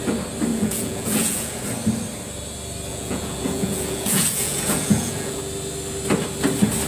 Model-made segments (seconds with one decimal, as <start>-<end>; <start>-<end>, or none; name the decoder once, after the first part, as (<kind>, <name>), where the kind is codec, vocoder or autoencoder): 0.5-1.6 (vocoder, Vocos); 2.9-5.4